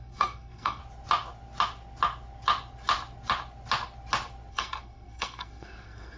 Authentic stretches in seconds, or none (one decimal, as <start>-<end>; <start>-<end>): 0.8-4.5